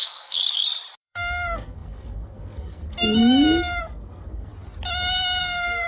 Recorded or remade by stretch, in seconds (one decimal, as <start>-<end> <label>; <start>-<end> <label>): 0.0-0.4 remade; 0.4-1.0 recorded; 1.0-3.2 remade; 3.2-3.8 recorded; 3.8-4.5 remade; 4.5-5.4 recorded; 5.4-5.9 remade

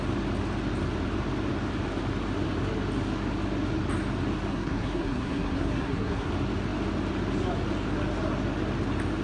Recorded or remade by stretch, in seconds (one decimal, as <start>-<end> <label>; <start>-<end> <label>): 0.0-4.5 recorded; 4.5-6.3 remade; 6.3-9.2 recorded

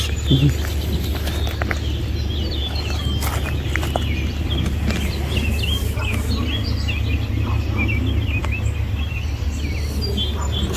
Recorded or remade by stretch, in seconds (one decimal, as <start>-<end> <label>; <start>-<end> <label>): 0.0-10.8 recorded

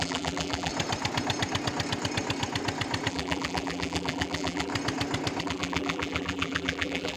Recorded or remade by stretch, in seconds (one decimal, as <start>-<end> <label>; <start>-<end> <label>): 0.0-0.7 remade; 0.7-3.1 recorded; 3.1-4.7 remade; 4.7-5.4 recorded; 5.4-7.2 remade